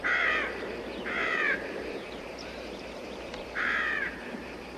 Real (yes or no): no